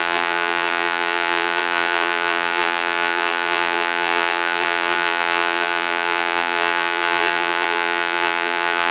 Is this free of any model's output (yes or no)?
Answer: no